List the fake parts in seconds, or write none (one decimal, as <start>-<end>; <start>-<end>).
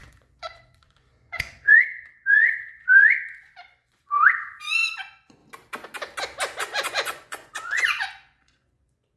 0.0-5.4; 6.6-9.2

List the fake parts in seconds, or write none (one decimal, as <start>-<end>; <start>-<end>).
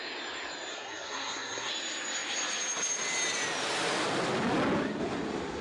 0.7-1.7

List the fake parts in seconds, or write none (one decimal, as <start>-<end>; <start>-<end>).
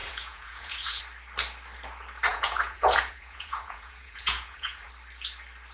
0.0-1.0; 2.3-4.9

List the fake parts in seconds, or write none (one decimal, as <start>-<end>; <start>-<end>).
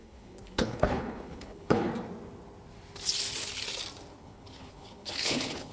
0.0-1.9; 4.2-5.7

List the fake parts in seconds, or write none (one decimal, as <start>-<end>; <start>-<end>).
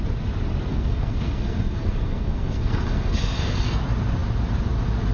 0.7-3.8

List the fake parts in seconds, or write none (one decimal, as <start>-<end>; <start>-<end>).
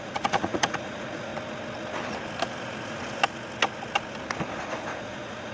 0.0-1.3; 4.6-5.5